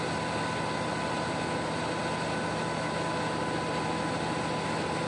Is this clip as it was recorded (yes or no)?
yes